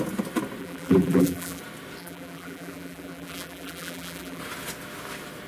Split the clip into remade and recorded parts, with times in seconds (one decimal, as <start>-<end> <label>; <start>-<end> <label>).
0.0-0.6 recorded; 0.6-1.6 remade; 1.6-2.0 recorded; 2.0-4.4 remade; 4.4-5.5 recorded